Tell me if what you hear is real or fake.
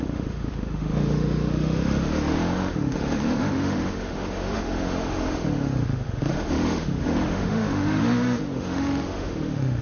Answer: fake